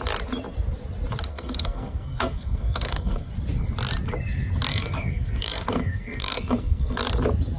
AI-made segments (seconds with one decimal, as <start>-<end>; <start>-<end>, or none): 1.3-3.3; 4.7-7.0